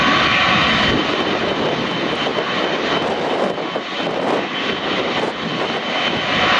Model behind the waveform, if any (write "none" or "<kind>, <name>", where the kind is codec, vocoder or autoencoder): none